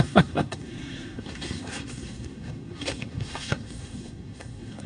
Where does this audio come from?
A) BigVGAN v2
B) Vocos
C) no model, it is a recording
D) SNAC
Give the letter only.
D